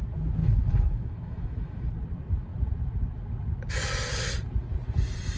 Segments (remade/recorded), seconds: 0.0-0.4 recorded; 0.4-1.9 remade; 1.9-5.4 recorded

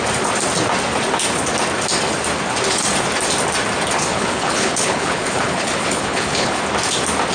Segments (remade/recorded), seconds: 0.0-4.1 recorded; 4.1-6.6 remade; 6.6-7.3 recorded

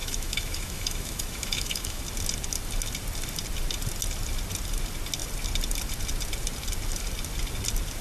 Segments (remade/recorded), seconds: 0.0-2.0 remade; 2.0-8.0 recorded

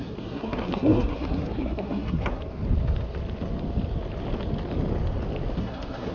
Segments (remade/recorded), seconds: 0.0-2.4 remade; 2.4-5.6 recorded; 5.6-6.1 remade